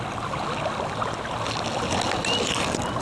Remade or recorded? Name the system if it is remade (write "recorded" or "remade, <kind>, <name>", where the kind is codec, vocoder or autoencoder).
recorded